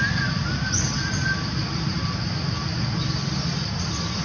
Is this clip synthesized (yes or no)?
no